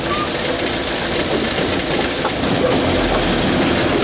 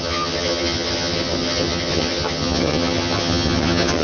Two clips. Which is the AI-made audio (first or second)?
second